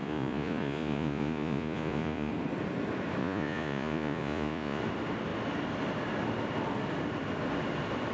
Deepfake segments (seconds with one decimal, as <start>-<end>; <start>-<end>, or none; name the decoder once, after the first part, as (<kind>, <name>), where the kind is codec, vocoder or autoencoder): 0.0-2.3 (vocoder, Vocos); 3.2-4.8